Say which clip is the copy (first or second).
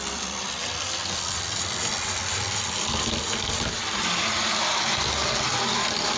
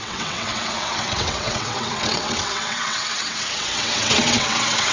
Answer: second